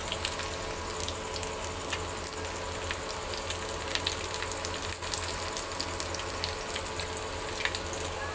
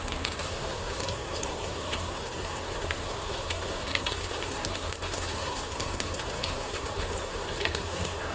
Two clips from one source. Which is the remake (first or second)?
second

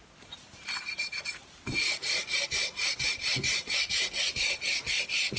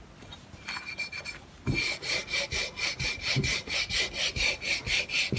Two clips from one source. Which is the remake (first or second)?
first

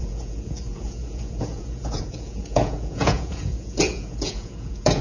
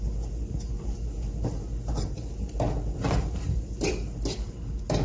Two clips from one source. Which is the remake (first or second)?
first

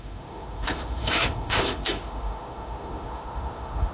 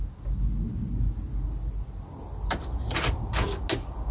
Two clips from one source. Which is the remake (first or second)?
first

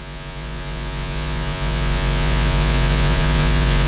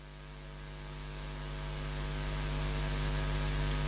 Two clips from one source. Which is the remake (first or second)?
first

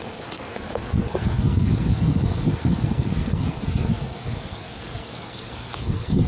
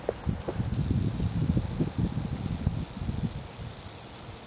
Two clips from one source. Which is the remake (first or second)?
first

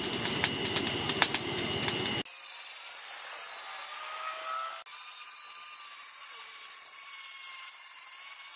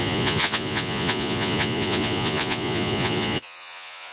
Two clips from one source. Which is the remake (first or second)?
second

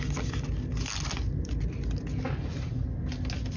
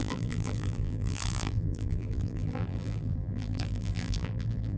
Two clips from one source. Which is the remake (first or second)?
second